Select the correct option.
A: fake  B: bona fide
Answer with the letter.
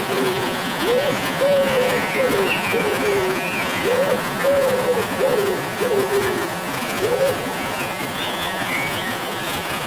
A